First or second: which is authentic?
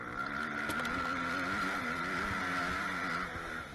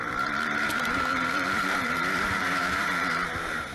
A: first